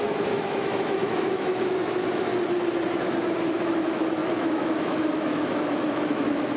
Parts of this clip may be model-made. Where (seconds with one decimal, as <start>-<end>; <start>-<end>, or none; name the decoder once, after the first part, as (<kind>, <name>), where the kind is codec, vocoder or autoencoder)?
0.0-2.3 (autoencoder, DAC-VAE); 3.5-6.6